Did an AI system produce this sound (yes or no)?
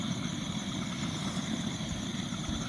yes